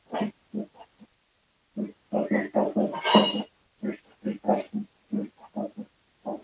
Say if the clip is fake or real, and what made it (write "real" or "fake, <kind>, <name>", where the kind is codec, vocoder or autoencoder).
real